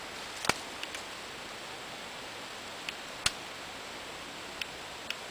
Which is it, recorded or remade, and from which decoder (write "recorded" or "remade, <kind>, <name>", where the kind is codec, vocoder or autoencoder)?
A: recorded